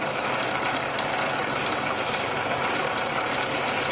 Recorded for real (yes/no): no